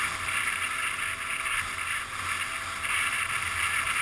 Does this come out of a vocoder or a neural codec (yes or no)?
no